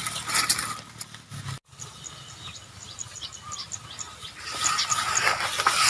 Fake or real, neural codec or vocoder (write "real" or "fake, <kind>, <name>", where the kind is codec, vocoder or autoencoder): real